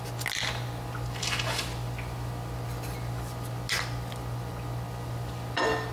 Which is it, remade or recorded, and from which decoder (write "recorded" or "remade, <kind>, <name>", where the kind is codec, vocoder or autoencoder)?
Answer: recorded